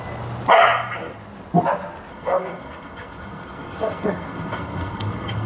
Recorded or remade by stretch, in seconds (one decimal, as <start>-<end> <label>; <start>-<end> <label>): 0.0-2.1 recorded; 2.1-5.5 remade